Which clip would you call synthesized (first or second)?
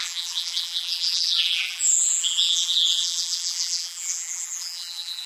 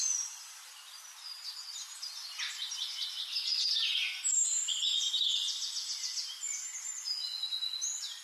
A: first